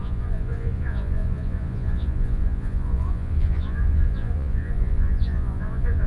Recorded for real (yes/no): no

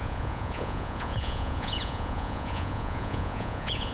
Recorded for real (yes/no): no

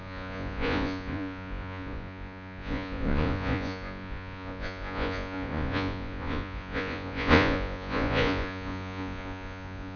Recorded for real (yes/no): no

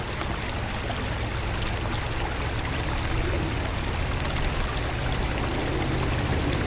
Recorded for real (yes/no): yes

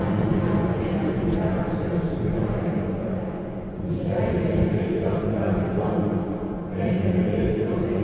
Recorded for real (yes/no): no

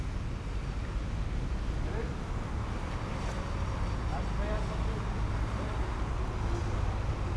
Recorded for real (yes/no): yes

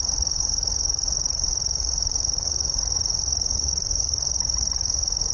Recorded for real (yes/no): no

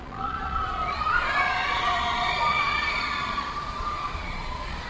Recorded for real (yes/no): no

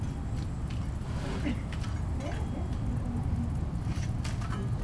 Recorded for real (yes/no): yes